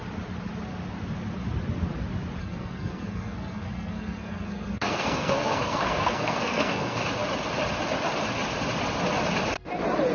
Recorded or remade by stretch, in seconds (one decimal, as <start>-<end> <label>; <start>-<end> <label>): 0.0-2.4 recorded; 2.4-7.0 remade; 7.0-10.1 recorded